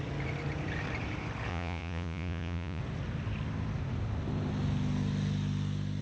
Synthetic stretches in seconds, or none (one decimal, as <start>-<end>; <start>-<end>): 1.5-2.8